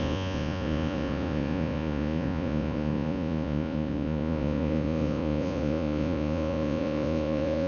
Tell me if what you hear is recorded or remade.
remade